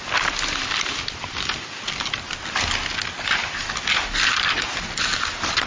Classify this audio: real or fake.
real